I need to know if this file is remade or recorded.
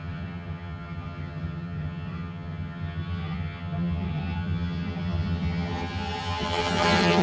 remade